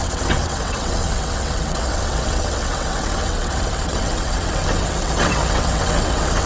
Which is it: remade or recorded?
remade